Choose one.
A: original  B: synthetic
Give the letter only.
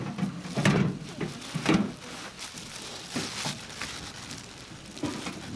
A